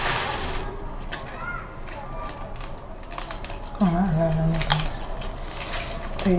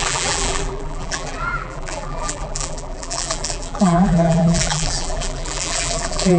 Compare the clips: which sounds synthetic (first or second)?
second